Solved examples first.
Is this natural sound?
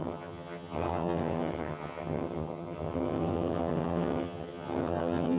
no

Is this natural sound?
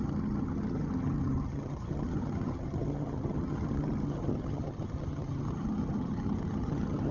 no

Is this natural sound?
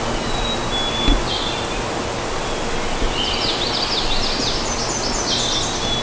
yes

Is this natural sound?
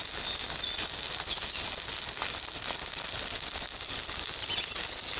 yes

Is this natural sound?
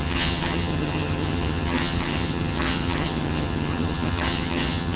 no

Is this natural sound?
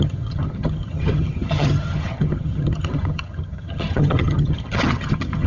no